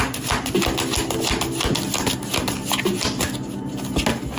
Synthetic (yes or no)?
no